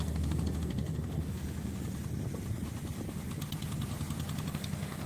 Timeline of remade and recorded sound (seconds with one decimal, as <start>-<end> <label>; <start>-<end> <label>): 0.0-1.4 remade; 1.4-4.5 recorded; 4.5-5.1 remade